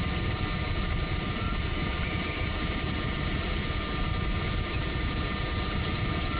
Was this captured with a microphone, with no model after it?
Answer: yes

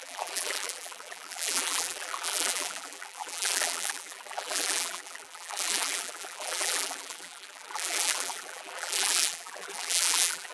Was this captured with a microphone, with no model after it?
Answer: no